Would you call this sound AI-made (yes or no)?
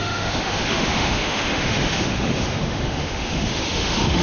yes